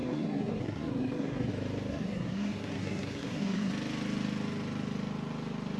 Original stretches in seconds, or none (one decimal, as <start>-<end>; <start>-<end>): 1.5-1.9; 3.7-5.8